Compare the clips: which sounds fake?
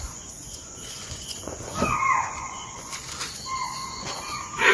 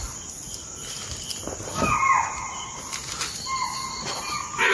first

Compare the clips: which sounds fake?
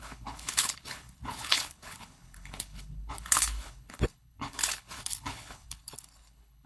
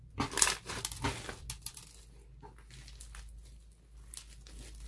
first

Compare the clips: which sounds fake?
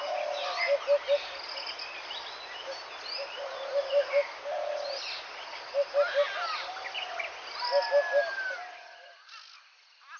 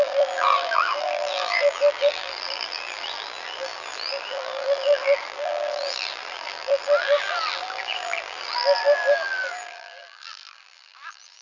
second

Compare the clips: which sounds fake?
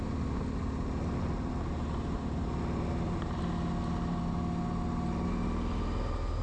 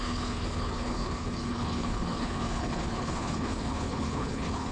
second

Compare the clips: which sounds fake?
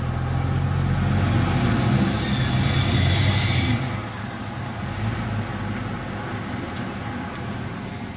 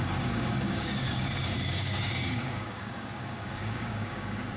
second